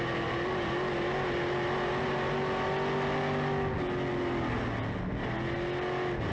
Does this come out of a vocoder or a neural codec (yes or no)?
no